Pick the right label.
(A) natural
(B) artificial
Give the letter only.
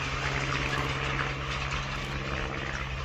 A